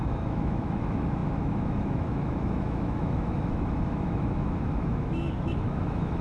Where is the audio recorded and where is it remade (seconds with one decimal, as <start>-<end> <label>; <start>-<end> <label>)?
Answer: 0.0-6.2 remade